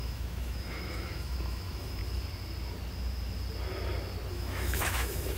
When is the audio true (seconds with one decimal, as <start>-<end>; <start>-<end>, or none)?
2.0-4.3